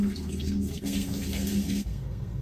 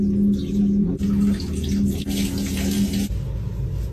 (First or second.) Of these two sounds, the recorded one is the second